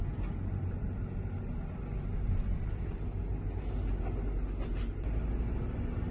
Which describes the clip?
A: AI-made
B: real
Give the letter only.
B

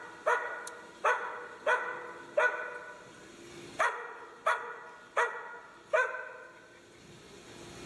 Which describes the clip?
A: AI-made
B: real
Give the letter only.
B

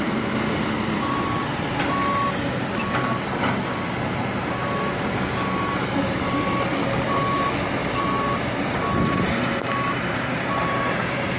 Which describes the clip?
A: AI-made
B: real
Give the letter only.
B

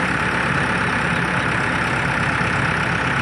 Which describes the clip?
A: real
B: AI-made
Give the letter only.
A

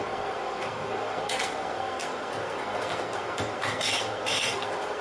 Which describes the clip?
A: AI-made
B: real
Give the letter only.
A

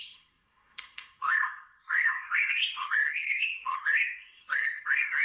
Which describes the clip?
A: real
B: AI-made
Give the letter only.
B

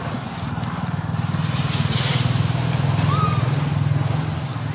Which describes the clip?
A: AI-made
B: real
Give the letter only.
B